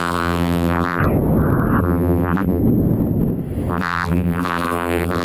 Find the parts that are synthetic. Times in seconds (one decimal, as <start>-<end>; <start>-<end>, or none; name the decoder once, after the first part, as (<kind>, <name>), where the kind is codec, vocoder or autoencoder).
0.0-1.0 (vocoder, BigVGAN v2); 1.8-2.6; 3.7-5.2